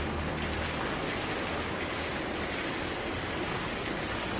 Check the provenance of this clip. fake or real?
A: real